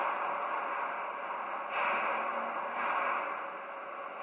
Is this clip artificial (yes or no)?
no